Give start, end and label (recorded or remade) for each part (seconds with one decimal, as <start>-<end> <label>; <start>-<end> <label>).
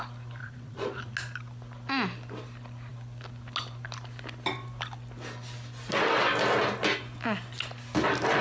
0.0-0.4 recorded; 0.4-1.0 remade; 1.0-8.4 recorded